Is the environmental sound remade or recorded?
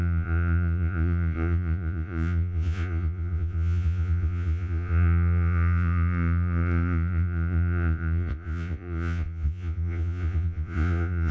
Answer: remade